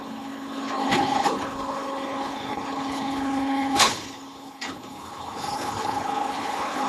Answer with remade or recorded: remade